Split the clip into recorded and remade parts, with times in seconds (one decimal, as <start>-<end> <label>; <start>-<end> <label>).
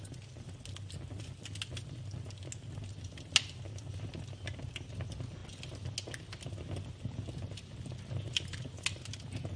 0.0-9.6 recorded